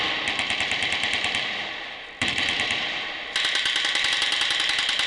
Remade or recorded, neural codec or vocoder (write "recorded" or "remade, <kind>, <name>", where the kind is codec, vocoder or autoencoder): recorded